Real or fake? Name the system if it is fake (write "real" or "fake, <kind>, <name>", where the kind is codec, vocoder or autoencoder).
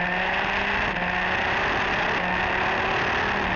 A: real